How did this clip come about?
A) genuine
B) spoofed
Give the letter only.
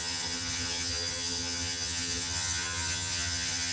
B